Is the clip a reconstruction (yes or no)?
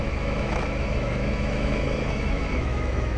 yes